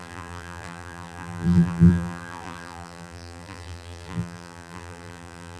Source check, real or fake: fake